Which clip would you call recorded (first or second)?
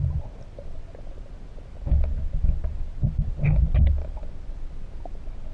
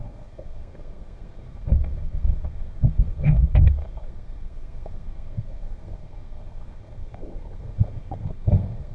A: first